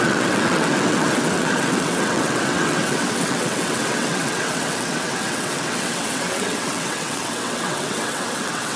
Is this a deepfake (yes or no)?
yes